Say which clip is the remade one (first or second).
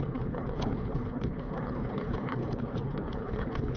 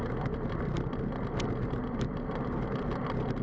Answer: first